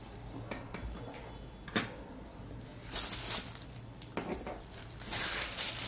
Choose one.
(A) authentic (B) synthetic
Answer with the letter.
A